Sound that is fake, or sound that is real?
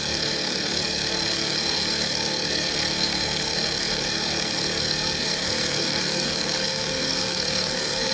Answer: fake